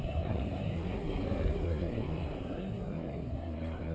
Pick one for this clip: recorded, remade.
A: remade